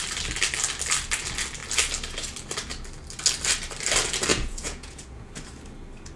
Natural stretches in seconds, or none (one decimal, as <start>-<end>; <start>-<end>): 0.0-4.3; 5.3-6.2